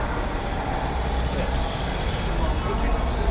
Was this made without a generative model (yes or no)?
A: yes